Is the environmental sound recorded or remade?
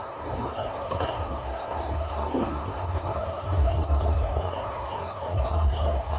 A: remade